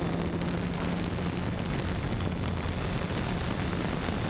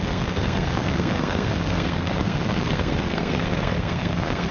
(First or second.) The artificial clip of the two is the second